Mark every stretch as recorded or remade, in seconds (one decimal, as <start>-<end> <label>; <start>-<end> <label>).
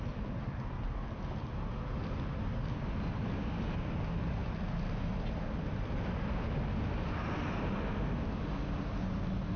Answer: 0.0-9.6 recorded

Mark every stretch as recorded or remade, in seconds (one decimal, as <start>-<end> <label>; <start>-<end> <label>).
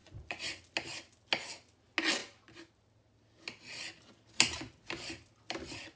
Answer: 0.0-0.6 remade; 0.6-6.0 recorded